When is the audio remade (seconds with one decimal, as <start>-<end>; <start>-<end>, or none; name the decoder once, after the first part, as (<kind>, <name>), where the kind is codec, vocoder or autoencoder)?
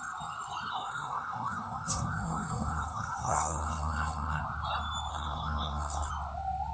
0.7-4.4 (codec, SNAC); 5.1-6.1